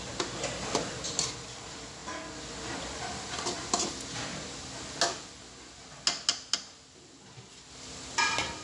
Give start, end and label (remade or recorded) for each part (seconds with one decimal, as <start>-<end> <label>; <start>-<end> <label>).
0.0-8.6 recorded